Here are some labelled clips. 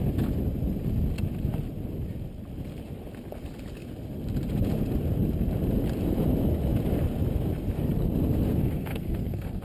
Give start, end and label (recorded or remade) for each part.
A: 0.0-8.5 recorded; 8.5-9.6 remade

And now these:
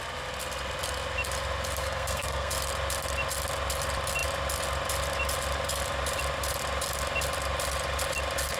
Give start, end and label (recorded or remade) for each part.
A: 0.0-1.8 recorded; 1.8-2.5 remade; 2.5-8.6 recorded

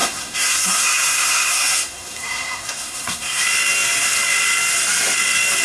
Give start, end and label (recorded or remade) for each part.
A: 0.0-3.4 remade; 3.4-5.6 recorded